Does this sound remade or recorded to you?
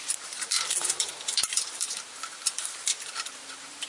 remade